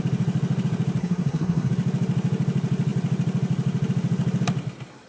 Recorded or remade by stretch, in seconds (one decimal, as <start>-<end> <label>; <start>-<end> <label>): 0.0-1.0 recorded; 1.0-1.7 remade; 1.7-5.1 recorded